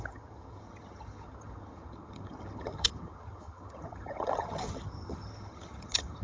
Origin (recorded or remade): remade